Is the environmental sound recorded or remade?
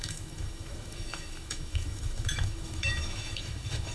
remade